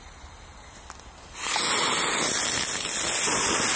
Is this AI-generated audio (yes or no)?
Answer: no